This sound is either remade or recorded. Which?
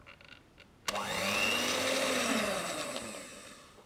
recorded